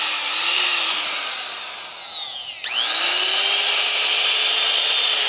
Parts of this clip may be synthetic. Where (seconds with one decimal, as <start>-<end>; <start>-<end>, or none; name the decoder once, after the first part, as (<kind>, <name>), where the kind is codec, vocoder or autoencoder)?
none